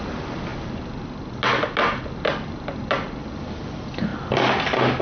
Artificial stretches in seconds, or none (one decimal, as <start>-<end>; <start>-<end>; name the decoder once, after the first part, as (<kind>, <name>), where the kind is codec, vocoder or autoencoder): none